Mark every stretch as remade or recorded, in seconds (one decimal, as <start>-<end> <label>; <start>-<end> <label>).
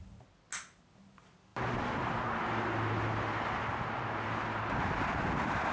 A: 0.0-5.7 recorded